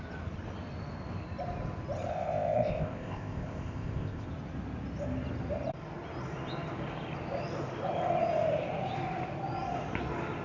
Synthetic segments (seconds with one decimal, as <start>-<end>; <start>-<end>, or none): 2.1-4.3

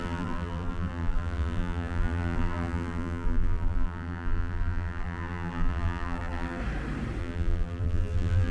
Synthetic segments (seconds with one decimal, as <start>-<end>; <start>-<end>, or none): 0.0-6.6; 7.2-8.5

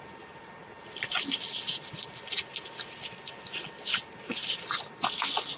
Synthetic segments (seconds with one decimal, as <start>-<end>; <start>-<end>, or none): none

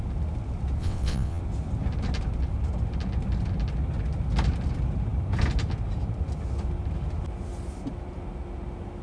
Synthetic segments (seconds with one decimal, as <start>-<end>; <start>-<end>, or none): 0.8-1.4

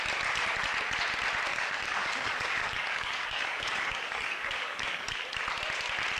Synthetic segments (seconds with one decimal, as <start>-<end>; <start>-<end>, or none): 1.5-5.2